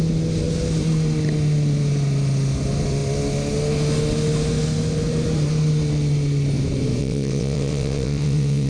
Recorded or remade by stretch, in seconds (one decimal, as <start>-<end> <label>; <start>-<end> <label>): 0.0-7.0 recorded; 7.0-8.7 remade